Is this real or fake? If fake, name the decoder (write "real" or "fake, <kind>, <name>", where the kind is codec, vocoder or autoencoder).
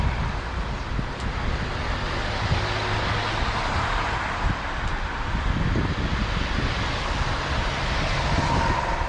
real